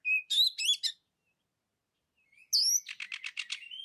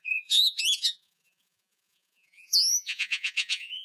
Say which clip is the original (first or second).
first